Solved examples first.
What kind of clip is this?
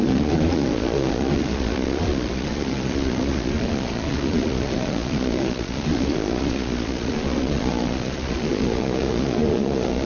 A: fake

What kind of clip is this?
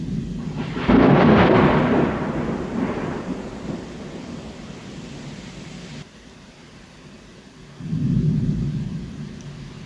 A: fake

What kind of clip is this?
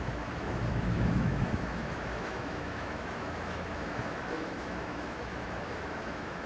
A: fake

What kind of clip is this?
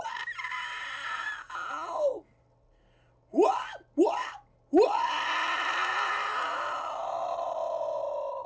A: real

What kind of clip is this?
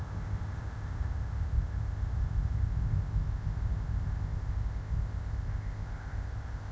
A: fake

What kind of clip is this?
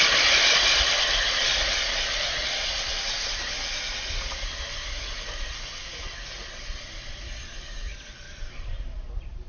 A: real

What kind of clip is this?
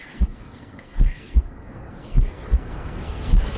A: fake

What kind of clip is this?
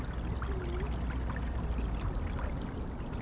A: real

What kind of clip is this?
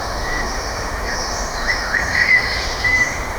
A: fake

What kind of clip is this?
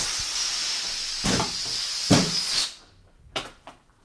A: real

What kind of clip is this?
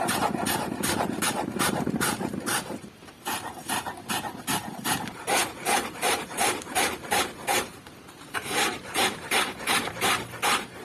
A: fake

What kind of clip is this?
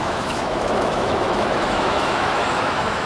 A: fake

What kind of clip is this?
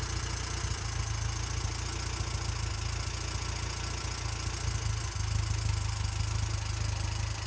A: real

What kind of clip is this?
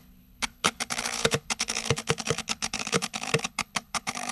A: fake